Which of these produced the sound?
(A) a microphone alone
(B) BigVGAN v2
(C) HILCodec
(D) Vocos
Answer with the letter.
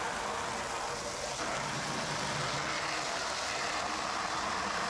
A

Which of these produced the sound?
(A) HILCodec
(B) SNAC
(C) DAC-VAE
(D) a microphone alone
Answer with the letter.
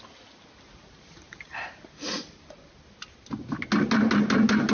D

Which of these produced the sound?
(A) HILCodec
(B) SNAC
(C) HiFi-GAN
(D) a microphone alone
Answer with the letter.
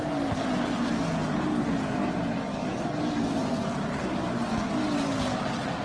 D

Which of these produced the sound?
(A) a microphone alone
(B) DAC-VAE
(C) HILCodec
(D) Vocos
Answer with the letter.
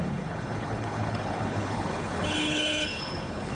C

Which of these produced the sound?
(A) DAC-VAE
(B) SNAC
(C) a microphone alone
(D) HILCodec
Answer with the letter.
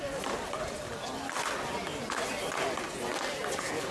C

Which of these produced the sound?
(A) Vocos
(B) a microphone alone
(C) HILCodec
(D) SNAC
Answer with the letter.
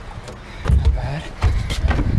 B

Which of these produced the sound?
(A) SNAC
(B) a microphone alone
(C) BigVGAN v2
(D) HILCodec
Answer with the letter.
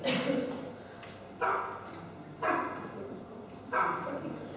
B